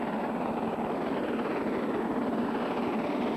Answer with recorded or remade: recorded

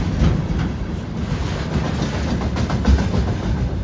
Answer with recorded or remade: recorded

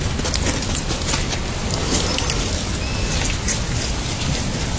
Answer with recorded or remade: recorded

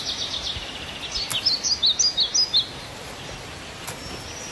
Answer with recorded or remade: recorded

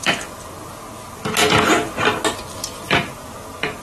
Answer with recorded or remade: recorded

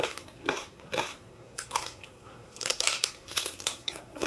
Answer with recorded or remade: remade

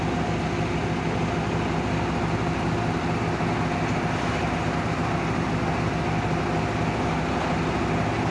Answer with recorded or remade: recorded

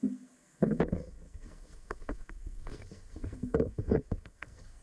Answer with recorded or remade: remade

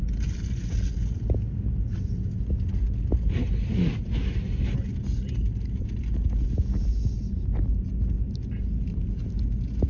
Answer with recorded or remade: recorded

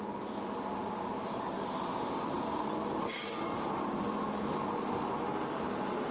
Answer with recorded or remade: recorded